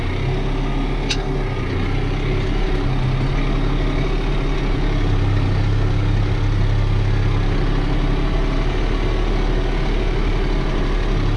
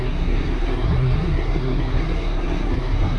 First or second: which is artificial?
second